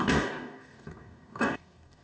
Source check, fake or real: fake